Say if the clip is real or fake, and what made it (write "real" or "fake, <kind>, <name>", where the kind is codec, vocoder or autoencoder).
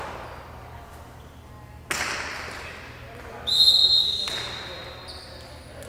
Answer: real